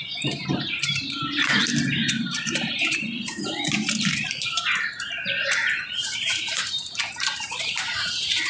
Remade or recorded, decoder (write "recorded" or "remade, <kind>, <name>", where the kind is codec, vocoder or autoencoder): remade, vocoder, BigVGAN v2